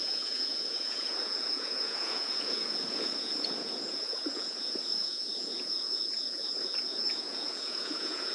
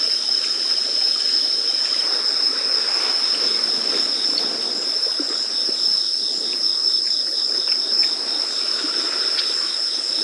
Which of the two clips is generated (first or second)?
first